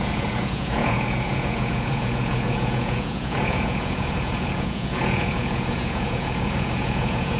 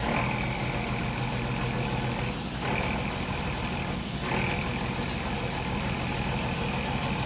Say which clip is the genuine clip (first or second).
second